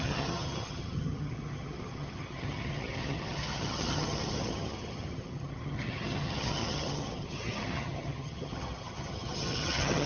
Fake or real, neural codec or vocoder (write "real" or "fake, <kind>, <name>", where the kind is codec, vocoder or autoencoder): fake, vocoder, HiFi-GAN